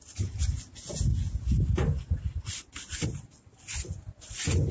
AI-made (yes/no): no